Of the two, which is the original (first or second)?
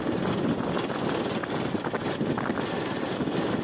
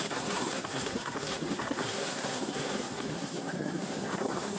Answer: first